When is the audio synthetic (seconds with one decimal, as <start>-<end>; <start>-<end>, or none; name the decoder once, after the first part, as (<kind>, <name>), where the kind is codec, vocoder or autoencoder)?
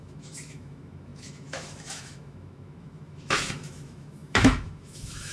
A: 0.0-5.3 (autoencoder, DAC-VAE)